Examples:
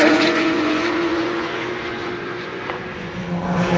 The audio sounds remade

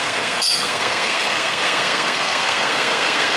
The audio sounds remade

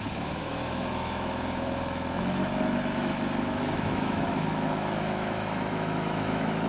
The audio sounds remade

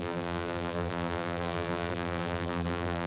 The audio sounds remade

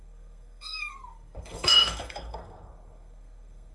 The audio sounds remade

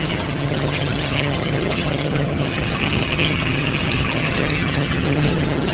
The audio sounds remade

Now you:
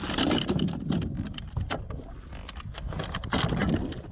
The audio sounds recorded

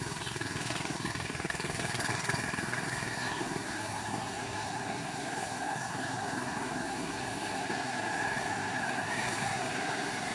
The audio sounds remade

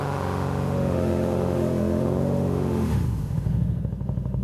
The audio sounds remade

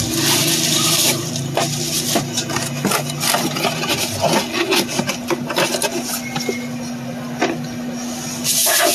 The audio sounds recorded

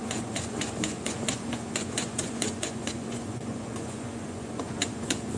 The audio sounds remade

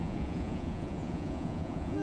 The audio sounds remade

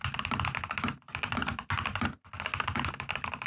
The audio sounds recorded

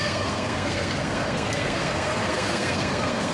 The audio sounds remade